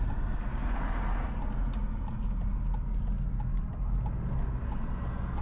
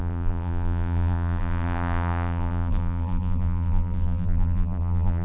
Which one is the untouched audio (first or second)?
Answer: first